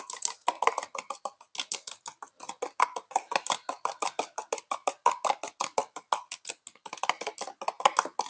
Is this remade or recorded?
recorded